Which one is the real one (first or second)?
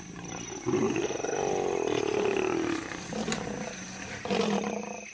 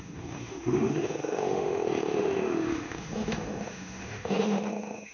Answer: first